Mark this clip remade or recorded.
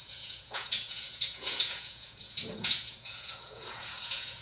remade